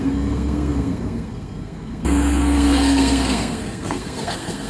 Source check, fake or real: fake